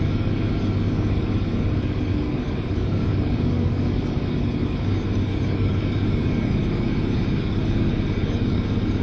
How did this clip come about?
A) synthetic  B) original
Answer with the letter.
A